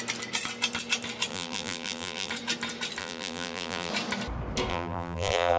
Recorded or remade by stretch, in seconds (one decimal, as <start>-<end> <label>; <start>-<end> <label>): 0.0-1.3 recorded; 1.3-2.3 remade; 2.3-3.0 recorded; 3.0-3.9 remade; 3.9-4.7 recorded; 4.7-5.6 remade